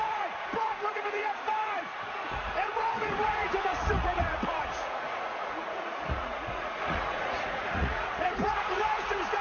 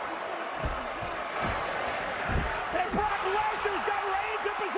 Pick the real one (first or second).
second